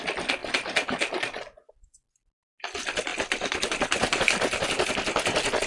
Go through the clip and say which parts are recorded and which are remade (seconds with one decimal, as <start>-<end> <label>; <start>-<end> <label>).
0.0-3.1 recorded; 3.1-4.2 remade; 4.2-5.7 recorded